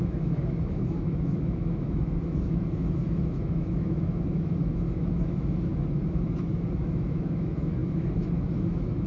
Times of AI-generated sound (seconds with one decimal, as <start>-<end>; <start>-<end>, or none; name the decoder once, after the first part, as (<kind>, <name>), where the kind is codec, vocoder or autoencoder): 0.0-9.1 (autoencoder, DAC-VAE)